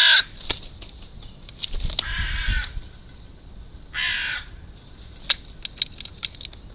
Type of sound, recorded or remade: recorded